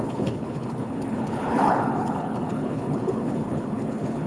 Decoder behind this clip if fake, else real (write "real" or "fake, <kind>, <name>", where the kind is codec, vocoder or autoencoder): fake, codec, HILCodec